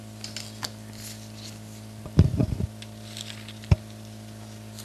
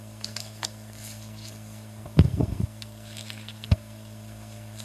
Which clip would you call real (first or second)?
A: first